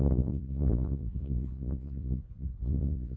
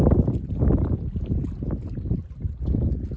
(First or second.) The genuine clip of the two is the second